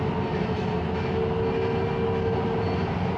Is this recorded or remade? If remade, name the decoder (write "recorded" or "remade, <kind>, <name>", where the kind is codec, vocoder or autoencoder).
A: recorded